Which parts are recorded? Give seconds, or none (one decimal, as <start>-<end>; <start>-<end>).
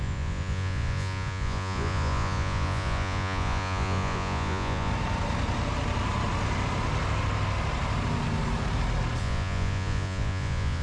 4.9-9.2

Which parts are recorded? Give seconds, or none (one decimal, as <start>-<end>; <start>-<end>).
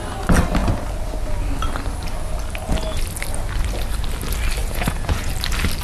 0.0-4.6; 5.3-5.8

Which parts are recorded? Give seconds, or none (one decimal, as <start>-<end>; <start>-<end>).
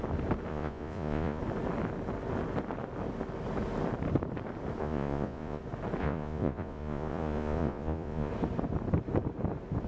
0.0-0.5; 1.4-4.8; 5.6-6.0; 8.3-9.9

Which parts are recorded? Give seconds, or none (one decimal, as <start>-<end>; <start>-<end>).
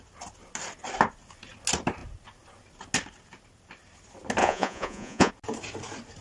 0.0-4.4; 5.3-6.2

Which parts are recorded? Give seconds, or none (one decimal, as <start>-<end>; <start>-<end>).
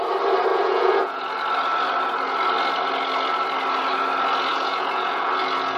0.0-0.5; 1.2-4.5; 5.3-5.8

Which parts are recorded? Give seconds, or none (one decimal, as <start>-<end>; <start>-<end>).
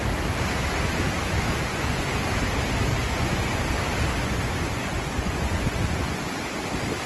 0.0-1.7; 2.2-2.9; 3.6-4.2; 6.4-7.1